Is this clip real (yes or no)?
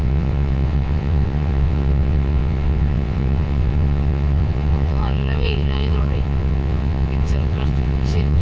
no